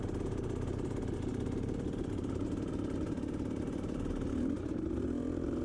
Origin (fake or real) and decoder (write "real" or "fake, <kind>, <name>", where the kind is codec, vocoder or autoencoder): real